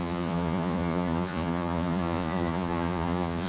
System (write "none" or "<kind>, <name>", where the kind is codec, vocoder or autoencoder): vocoder, Vocos